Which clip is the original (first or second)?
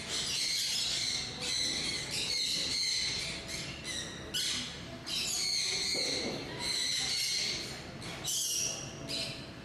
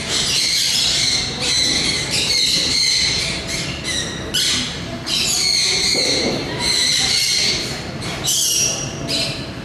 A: first